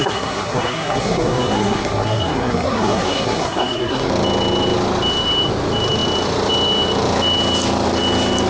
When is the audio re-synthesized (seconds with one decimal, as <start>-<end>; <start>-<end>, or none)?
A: 0.0-4.1